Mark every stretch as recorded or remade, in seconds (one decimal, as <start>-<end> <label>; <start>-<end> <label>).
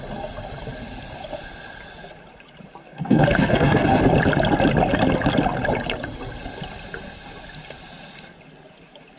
0.0-2.8 recorded; 2.8-4.0 remade; 4.0-9.2 recorded